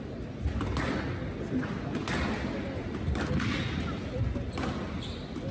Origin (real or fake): real